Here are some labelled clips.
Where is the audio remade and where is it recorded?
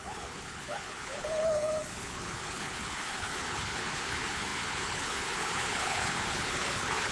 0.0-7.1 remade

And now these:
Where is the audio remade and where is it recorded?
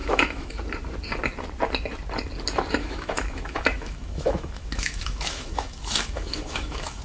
0.0-0.6 remade; 0.6-2.8 recorded; 2.8-7.0 remade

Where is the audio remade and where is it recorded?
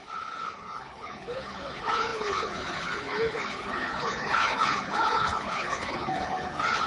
0.0-6.9 remade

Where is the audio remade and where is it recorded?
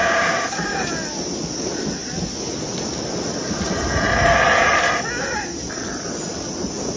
0.0-0.9 remade; 0.9-7.0 recorded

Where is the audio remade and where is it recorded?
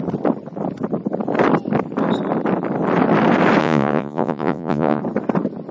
0.0-3.6 recorded; 3.6-5.0 remade; 5.0-5.7 recorded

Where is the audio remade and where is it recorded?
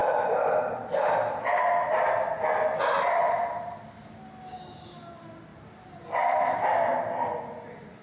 0.0-1.1 remade; 1.1-5.5 recorded; 5.5-7.3 remade; 7.3-8.0 recorded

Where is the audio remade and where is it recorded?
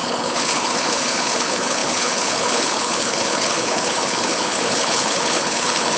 0.0-6.0 remade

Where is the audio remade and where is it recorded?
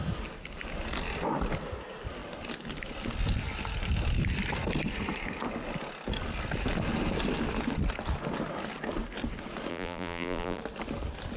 0.0-9.7 recorded; 9.7-10.6 remade; 10.6-11.4 recorded